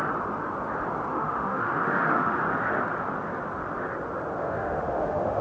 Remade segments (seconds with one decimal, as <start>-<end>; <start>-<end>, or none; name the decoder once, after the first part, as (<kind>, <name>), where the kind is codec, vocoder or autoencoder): 1.1-2.4 (autoencoder, DAC-VAE); 4.4-5.4